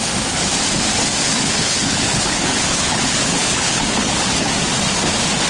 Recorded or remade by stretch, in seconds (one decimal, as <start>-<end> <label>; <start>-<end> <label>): 0.0-1.2 recorded; 1.2-4.5 remade; 4.5-5.5 recorded